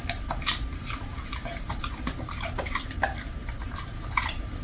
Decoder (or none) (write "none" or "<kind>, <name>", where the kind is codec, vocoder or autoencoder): vocoder, BigVGAN v2